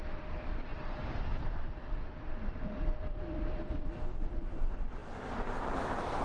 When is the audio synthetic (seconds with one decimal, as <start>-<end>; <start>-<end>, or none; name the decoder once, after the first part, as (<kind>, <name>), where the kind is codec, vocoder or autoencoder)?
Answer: 0.7-1.5 (vocoder, BigVGAN v2); 2.3-3.8